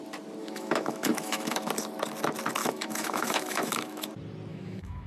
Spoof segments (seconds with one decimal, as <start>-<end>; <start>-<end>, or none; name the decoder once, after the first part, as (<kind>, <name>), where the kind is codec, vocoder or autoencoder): 0.4-1.7 (autoencoder, DAC-VAE); 2.6-4.1; 4.5-5.1